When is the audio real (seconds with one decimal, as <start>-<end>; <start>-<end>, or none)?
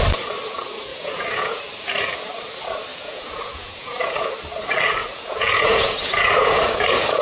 0.0-0.9; 1.6-2.9; 4.3-5.0